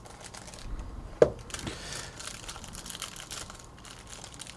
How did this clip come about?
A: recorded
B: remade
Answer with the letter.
A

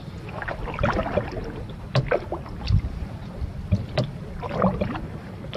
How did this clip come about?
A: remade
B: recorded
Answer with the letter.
B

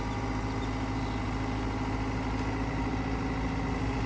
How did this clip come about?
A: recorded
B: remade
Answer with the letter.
A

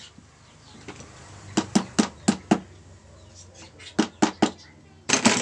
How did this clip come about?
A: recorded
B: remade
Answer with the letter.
A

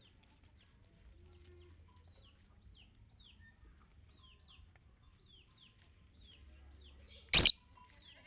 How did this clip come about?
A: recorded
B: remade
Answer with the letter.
A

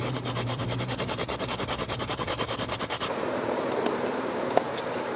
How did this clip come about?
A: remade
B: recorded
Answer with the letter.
A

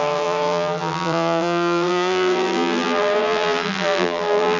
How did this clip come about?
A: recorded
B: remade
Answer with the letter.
B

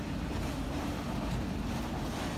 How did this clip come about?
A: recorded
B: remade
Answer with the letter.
A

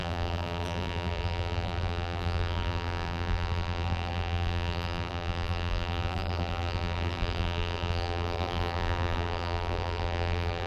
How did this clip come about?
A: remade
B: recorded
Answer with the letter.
A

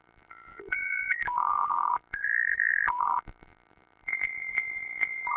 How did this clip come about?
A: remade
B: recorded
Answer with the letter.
A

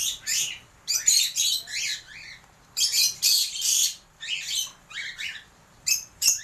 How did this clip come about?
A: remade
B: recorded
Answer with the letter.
A